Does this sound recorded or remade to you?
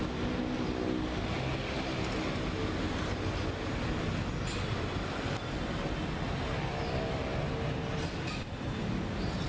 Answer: recorded